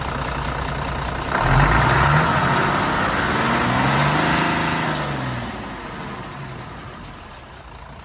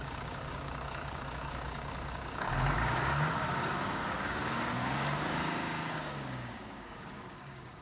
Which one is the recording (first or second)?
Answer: first